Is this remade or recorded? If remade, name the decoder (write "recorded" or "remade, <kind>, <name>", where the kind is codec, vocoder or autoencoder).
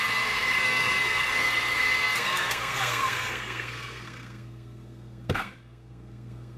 remade, codec, SNAC